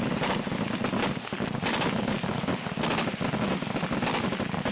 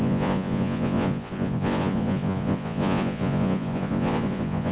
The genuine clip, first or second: first